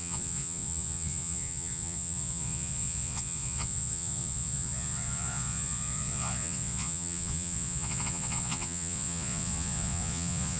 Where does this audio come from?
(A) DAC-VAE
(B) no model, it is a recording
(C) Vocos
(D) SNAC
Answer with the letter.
C